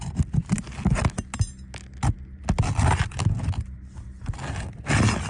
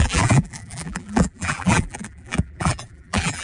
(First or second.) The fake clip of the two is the second